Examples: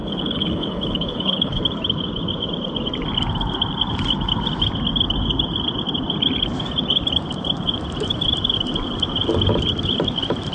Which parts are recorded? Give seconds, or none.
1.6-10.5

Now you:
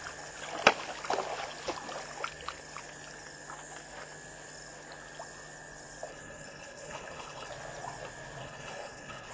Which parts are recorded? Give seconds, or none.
0.0-6.1; 7.5-8.4

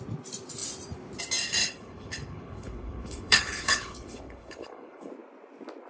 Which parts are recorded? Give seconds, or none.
0.0-1.6; 5.1-5.9

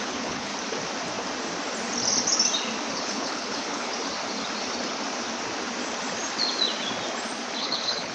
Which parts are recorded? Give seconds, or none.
0.5-2.9; 3.9-7.6

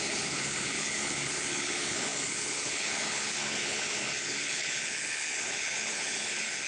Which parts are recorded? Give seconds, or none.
none

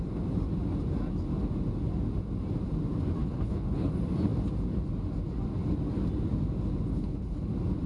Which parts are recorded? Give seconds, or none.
0.0-3.2; 3.9-6.9; 7.5-7.9

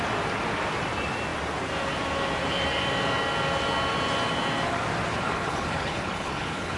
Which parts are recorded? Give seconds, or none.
0.0-5.1

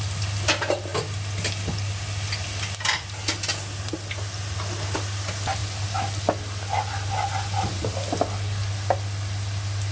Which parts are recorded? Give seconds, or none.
0.0-9.9